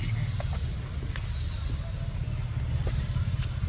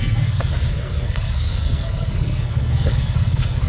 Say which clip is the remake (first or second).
second